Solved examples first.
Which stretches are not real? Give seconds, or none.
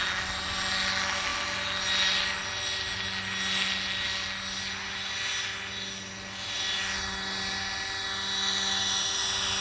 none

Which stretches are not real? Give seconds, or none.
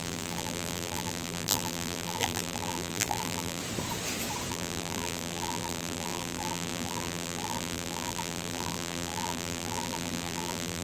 0.0-3.6 (vocoder, BigVGAN v2); 4.5-10.8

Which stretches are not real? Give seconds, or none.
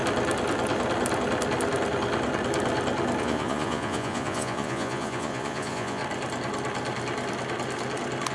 3.2-6.0 (vocoder, Vocos)